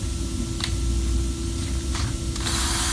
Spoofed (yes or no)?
no